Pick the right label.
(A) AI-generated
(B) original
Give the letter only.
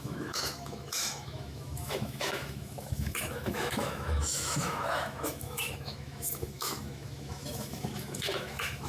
A